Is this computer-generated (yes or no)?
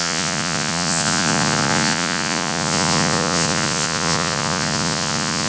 yes